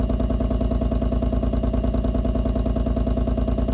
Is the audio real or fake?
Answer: real